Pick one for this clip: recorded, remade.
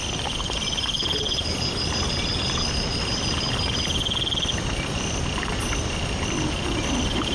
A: recorded